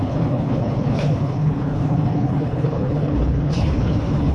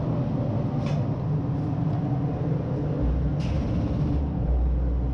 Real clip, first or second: second